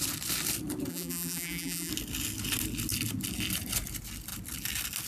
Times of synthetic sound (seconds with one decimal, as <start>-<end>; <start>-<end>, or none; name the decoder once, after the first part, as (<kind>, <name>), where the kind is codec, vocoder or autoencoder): 0.9-1.9 (vocoder, BigVGAN v2)